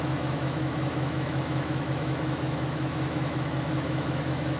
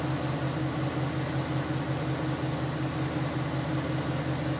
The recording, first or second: second